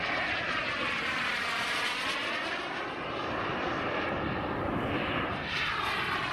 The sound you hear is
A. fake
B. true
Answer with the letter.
A